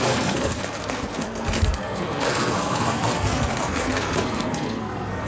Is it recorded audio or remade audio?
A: remade